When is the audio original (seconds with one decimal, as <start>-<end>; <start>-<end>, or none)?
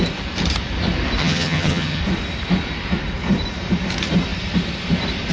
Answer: 0.0-1.2; 2.0-5.3